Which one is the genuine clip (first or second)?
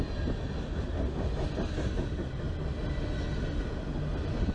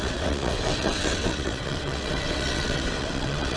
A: first